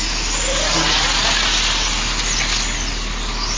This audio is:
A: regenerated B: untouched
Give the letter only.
B